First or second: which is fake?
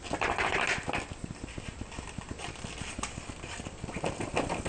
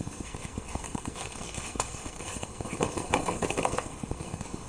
second